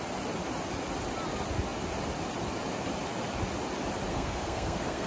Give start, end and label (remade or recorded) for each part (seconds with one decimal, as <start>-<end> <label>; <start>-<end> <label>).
0.0-4.1 recorded; 4.1-5.1 remade

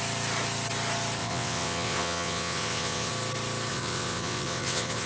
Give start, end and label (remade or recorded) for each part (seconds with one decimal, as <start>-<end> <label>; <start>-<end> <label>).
0.0-1.2 recorded; 1.2-3.1 remade; 3.1-3.7 recorded; 3.7-5.1 remade

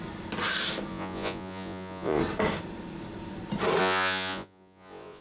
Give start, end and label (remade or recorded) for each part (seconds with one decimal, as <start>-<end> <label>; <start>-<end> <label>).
0.0-0.9 recorded; 0.9-2.2 remade; 2.2-3.8 recorded; 3.8-5.2 remade

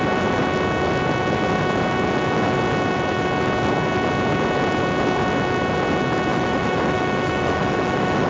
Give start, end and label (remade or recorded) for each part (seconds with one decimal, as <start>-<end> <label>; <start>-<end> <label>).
0.0-6.3 recorded; 6.3-8.3 remade

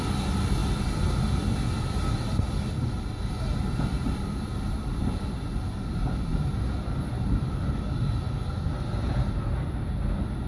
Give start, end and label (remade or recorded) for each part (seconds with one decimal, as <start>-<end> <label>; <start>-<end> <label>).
0.0-10.5 recorded

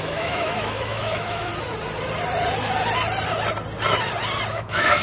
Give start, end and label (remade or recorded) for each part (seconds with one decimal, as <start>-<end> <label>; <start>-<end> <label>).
0.0-1.5 remade; 1.5-4.5 recorded; 4.5-5.0 remade

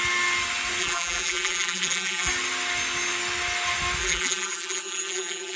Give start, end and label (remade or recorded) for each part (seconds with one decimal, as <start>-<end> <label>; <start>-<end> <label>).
0.0-0.8 recorded; 0.8-2.3 remade; 2.3-4.0 recorded; 4.0-5.6 remade

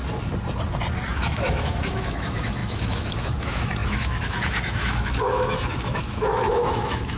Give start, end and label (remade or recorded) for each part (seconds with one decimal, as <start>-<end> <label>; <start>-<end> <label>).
0.0-1.1 recorded; 1.1-7.2 remade